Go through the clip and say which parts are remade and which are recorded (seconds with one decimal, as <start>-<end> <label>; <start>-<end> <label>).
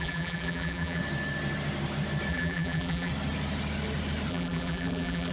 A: 0.0-1.0 remade; 1.0-2.3 recorded; 2.3-3.1 remade; 3.1-4.3 recorded; 4.3-5.3 remade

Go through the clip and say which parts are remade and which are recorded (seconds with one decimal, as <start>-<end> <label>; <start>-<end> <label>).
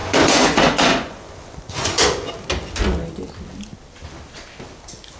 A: 0.0-2.3 remade; 2.3-5.2 recorded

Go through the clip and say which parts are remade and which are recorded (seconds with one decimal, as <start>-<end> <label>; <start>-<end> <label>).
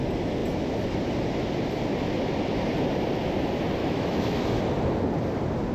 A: 0.0-3.8 recorded; 3.8-4.6 remade; 4.6-5.7 recorded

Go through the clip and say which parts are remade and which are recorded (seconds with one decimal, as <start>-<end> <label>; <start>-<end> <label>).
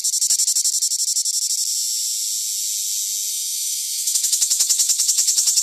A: 0.0-3.3 recorded; 3.3-5.6 remade